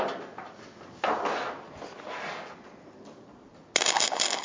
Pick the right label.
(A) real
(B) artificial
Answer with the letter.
A